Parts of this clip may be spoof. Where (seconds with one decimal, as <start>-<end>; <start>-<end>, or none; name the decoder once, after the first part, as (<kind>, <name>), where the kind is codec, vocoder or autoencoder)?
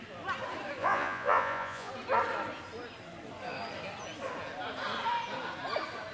0.8-1.9 (vocoder, Vocos)